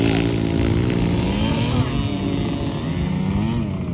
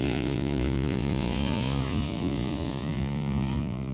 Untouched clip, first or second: first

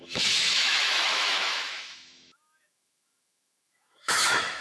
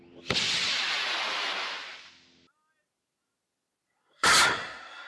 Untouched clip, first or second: second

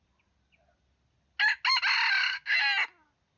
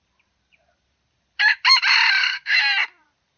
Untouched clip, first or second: first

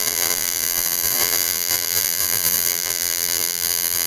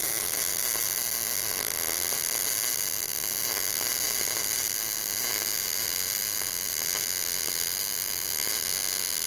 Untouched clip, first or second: second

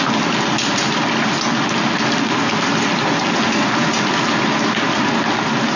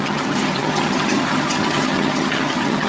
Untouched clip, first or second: first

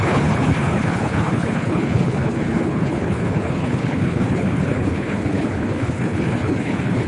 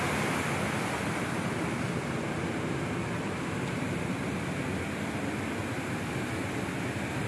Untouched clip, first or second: second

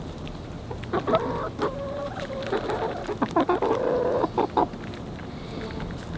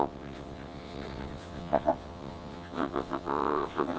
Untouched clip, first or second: first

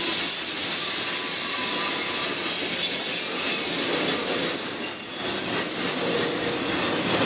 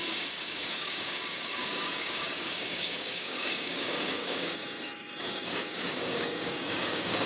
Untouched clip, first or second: first